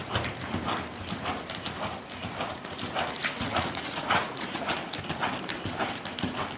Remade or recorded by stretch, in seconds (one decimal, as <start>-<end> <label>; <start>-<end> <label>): 0.0-3.2 recorded; 3.2-4.7 remade; 4.7-6.6 recorded

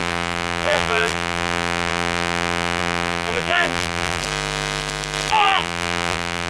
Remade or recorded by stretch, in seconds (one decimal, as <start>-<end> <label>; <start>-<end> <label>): 0.0-4.2 remade; 4.2-5.3 recorded; 5.3-6.5 remade